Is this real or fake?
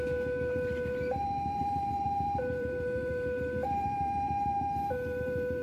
fake